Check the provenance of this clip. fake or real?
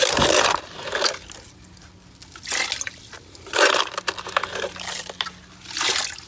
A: real